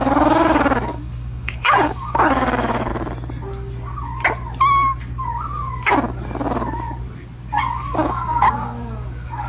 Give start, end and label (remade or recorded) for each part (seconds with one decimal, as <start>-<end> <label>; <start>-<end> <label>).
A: 0.0-2.9 remade; 2.9-7.6 recorded; 7.6-9.5 remade